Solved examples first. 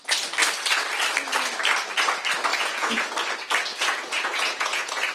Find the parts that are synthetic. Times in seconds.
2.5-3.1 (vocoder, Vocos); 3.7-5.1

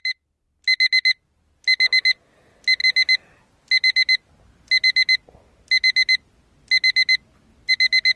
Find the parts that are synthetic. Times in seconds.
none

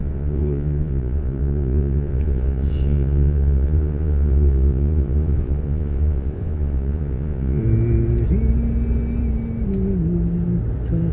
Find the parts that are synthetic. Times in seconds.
0.0-7.6 (vocoder, Vocos)

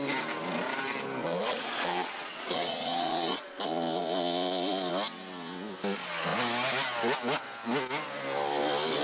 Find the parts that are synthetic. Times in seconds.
1.2-3.6 (vocoder, Vocos)